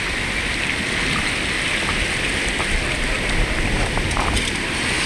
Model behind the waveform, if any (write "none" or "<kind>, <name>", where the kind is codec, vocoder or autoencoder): none